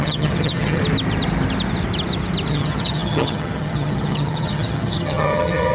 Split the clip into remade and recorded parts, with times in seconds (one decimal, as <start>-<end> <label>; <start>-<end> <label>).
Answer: 0.0-0.8 remade; 0.8-2.5 recorded; 2.5-5.7 remade